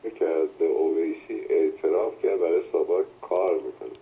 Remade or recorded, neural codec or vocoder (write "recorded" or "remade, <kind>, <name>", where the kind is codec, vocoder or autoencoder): remade, vocoder, BigVGAN v2